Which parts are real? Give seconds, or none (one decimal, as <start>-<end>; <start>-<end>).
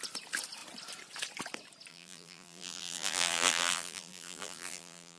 0.0-1.9